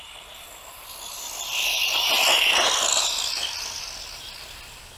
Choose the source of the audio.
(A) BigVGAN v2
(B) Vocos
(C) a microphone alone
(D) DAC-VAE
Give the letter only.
C